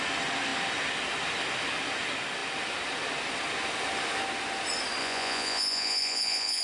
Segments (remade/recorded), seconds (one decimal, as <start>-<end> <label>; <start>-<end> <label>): 0.0-5.0 recorded; 5.0-6.6 remade